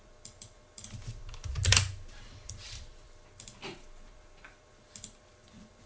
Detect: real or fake fake